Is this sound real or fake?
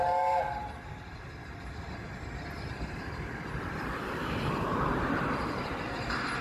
real